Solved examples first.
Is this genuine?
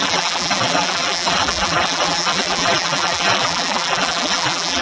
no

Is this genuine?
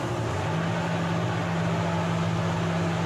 yes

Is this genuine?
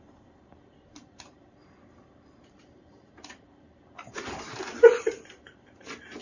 no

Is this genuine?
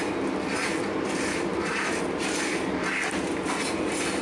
yes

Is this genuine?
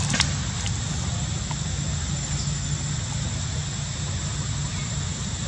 yes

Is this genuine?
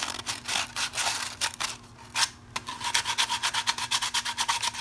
yes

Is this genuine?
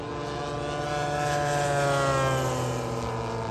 yes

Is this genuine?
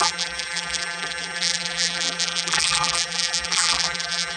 no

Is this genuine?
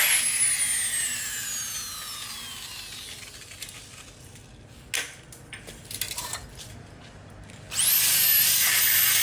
yes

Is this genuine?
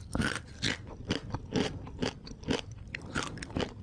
no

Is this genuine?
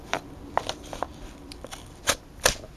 no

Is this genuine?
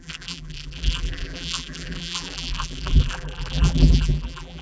no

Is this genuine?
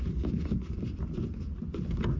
no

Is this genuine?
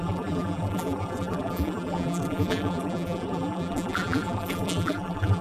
no